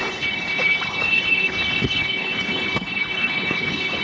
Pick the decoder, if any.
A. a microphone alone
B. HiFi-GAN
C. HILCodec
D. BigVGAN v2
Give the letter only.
C